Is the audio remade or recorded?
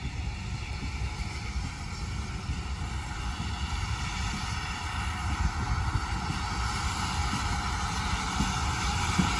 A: recorded